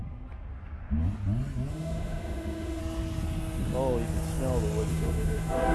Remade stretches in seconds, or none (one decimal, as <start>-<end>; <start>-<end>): 1.7-2.8; 4.9-5.7